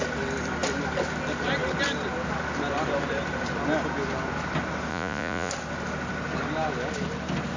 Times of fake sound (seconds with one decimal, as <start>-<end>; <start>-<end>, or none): 4.9-5.5